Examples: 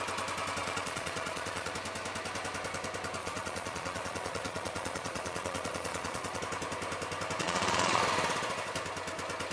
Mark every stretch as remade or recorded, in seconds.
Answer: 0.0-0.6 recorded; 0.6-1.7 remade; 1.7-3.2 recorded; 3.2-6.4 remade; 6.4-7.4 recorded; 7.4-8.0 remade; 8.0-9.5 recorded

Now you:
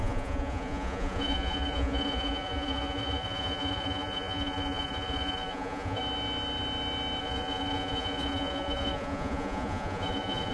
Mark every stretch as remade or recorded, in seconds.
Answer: 0.0-6.0 remade; 6.0-7.2 recorded; 7.2-10.5 remade

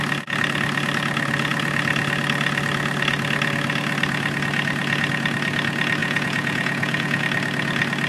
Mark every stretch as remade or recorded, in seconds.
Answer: 0.0-6.0 recorded; 6.0-7.2 remade; 7.2-8.1 recorded

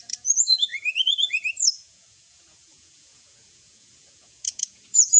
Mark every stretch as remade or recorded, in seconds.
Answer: 0.0-5.2 remade

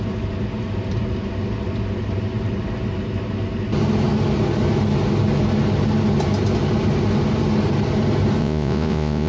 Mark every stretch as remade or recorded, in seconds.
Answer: 0.0-8.4 recorded; 8.4-9.3 remade

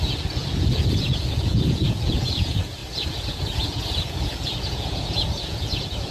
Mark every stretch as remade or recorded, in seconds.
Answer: 0.0-6.1 remade

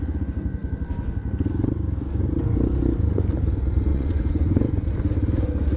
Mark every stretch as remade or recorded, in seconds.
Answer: 0.0-3.9 recorded; 3.9-4.9 remade; 4.9-5.8 recorded

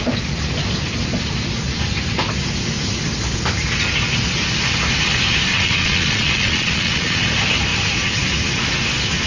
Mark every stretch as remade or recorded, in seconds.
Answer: 0.0-5.5 recorded; 5.5-7.2 remade; 7.2-9.3 recorded